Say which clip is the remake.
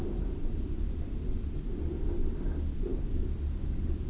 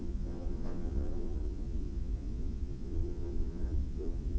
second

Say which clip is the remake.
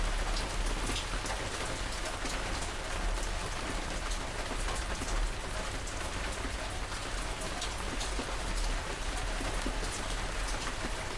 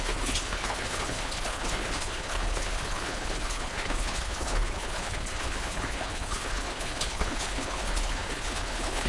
second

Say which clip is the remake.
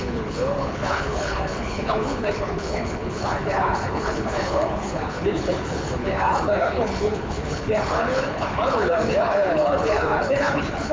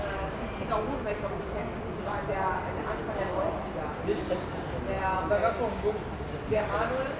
first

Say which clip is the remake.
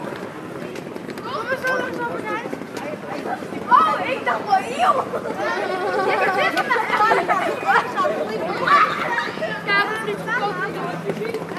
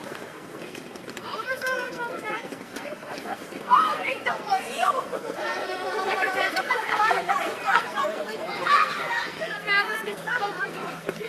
second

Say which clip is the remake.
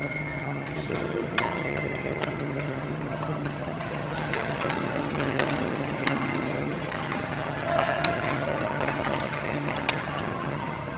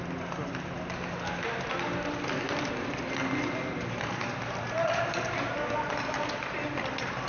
first